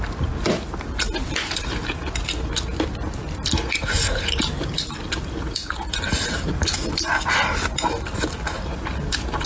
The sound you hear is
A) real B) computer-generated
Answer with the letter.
A